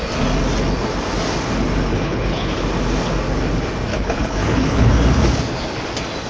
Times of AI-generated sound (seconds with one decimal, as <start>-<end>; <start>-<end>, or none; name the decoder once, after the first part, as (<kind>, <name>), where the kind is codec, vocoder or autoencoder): 1.9-2.6 (codec, HILCodec); 3.9-4.9